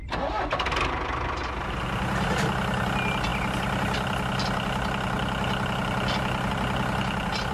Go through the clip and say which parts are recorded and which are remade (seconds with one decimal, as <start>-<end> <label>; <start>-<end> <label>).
0.0-7.5 recorded

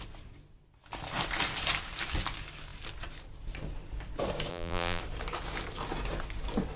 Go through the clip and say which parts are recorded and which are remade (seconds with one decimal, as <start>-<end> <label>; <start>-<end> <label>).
0.0-4.5 recorded; 4.5-5.0 remade; 5.0-6.8 recorded

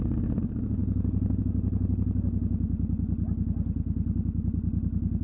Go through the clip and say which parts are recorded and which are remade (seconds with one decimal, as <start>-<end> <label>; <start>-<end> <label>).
0.0-5.2 recorded

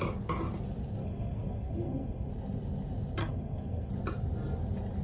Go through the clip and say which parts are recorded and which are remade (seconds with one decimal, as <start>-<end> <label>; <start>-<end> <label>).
0.0-1.0 recorded; 1.0-2.3 remade; 2.3-3.2 recorded; 3.2-3.9 remade; 3.9-5.0 recorded

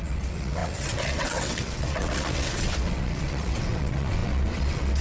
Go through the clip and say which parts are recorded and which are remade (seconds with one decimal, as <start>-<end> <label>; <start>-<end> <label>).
0.0-5.0 remade

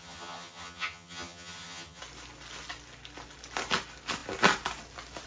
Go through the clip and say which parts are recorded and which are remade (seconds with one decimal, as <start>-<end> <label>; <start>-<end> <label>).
0.0-2.0 remade; 2.0-5.3 recorded

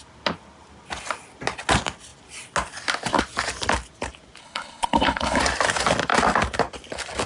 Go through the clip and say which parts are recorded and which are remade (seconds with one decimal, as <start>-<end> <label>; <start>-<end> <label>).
0.0-4.4 recorded; 4.4-5.4 remade; 5.4-7.3 recorded